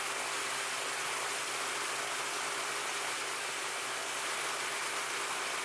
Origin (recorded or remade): recorded